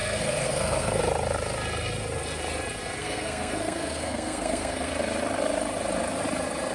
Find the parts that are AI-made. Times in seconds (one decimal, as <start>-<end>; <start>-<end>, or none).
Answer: 0.0-1.0; 3.0-4.9